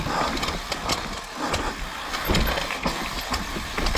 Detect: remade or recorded recorded